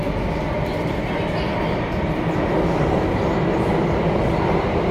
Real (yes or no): yes